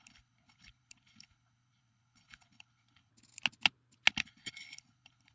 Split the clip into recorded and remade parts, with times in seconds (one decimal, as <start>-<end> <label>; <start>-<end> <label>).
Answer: 0.0-3.1 remade; 3.1-4.1 recorded; 4.1-5.3 remade